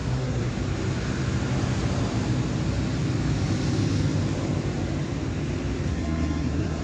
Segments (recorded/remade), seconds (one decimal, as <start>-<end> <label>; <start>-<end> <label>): 0.0-0.5 remade; 0.5-5.9 recorded; 5.9-6.8 remade